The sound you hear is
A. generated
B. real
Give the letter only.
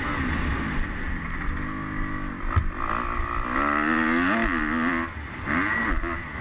B